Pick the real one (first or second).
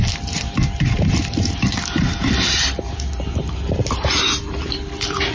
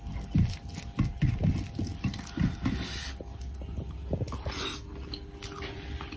second